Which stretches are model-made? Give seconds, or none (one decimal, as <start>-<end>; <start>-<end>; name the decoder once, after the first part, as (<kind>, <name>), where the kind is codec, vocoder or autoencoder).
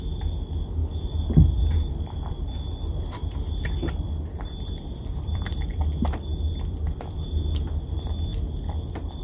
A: 0.0-0.8 (vocoder, BigVGAN v2); 1.9-3.2; 3.9-9.2